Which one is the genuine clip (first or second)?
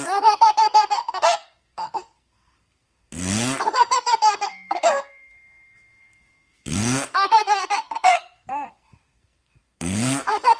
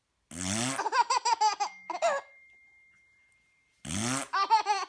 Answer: second